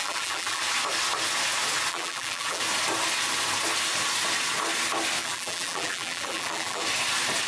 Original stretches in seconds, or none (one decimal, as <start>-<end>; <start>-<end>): 0.6-1.9; 2.6-5.2; 6.8-7.5